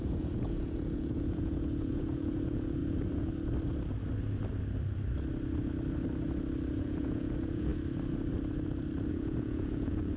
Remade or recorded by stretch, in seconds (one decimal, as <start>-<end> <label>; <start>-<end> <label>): 0.0-2.8 remade; 2.8-6.8 recorded; 6.8-7.7 remade; 7.7-9.1 recorded; 9.1-10.2 remade